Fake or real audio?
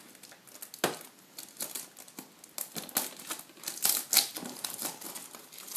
real